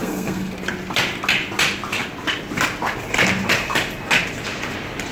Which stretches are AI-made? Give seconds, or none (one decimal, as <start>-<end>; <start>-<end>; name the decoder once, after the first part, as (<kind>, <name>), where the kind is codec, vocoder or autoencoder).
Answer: 0.0-0.5 (codec, SNAC)